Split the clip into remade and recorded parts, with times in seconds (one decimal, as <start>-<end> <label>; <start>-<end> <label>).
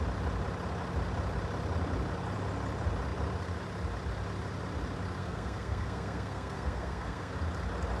0.0-5.2 recorded; 5.2-7.3 remade; 7.3-8.0 recorded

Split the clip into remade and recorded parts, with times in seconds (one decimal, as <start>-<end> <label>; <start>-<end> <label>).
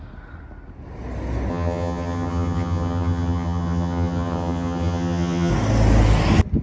0.0-1.5 recorded; 1.5-5.5 remade; 5.5-6.6 recorded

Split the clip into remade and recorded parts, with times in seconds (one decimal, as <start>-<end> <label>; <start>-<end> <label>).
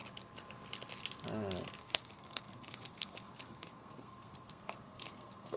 0.0-1.8 recorded; 1.8-5.6 remade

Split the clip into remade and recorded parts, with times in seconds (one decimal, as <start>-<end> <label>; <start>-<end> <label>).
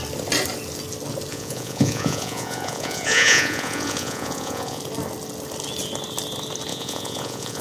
0.0-1.3 recorded; 1.3-4.8 remade; 4.8-6.7 recorded; 6.7-7.6 remade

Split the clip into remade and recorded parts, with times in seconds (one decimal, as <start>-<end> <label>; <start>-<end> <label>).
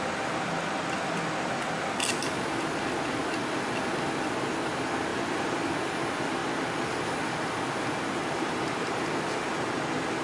0.0-5.1 recorded; 5.1-5.7 remade; 5.7-8.2 recorded; 8.2-9.1 remade; 9.1-10.2 recorded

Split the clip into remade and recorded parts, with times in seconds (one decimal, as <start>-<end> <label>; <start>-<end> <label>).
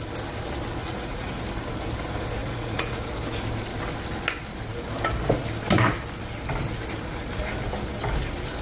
0.0-0.8 recorded; 0.8-1.4 remade; 1.4-2.4 recorded; 2.4-3.0 remade; 3.0-8.6 recorded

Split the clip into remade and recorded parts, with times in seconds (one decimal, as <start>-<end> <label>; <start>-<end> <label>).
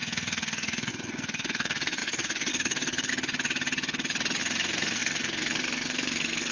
0.0-3.1 remade; 3.1-4.4 recorded; 4.4-6.5 remade